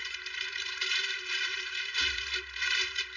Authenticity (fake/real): fake